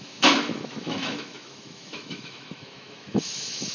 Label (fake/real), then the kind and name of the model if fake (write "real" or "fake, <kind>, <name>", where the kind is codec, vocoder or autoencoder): fake, autoencoder, DAC-VAE